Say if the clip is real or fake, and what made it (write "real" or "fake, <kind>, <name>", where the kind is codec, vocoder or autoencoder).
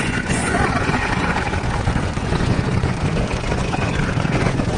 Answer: fake, vocoder, Vocos